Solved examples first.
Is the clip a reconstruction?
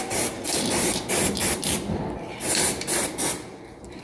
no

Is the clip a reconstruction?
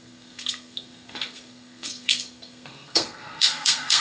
yes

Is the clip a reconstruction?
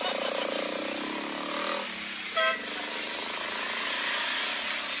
no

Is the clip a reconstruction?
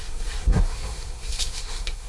yes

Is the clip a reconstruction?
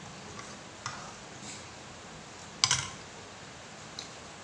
no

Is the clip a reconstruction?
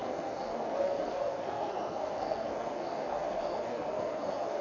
yes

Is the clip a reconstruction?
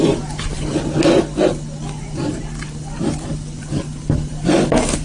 no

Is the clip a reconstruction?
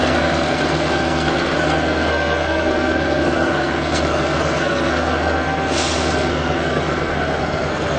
yes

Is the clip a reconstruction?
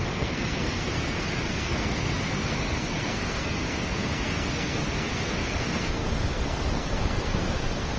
yes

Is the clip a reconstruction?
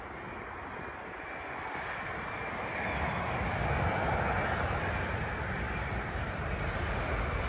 no